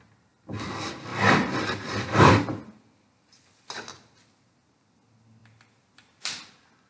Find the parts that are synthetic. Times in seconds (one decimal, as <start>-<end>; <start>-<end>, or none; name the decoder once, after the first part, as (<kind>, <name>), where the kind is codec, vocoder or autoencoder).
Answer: 1.1-2.3 (vocoder, BigVGAN v2); 5.4-6.9